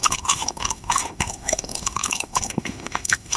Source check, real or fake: fake